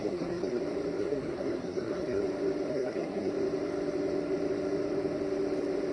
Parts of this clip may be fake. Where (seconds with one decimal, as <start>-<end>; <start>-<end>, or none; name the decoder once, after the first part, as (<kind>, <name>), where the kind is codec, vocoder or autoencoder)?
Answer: 0.0-0.6 (codec, SNAC); 1.0-2.2; 2.7-3.3